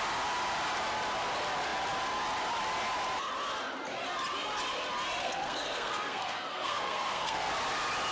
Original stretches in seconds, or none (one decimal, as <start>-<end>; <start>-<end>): 0.0-5.2; 7.5-8.1